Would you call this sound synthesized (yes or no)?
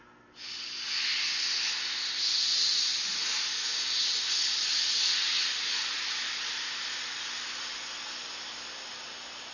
no